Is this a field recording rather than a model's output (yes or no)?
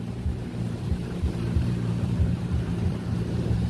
no